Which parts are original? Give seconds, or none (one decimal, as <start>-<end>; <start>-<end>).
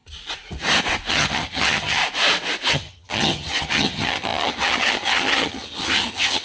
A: 0.0-1.1; 2.0-2.7